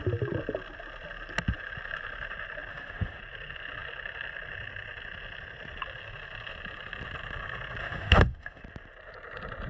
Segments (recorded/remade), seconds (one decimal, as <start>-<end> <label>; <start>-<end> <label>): 0.0-2.7 recorded; 2.7-3.2 remade; 3.2-7.8 recorded; 7.8-8.6 remade; 8.6-9.7 recorded